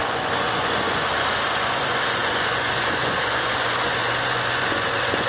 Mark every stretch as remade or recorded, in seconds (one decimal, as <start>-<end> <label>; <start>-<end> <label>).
0.0-5.3 remade